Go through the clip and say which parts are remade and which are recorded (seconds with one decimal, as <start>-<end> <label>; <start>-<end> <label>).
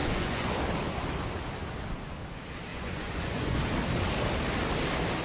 0.0-0.5 remade; 0.5-2.7 recorded; 2.7-3.6 remade; 3.6-5.2 recorded